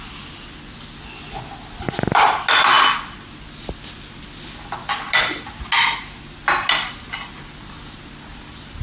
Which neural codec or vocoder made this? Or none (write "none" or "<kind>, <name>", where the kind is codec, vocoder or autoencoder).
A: none